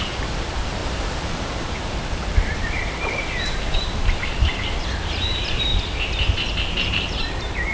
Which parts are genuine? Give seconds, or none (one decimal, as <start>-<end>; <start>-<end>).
5.7-6.9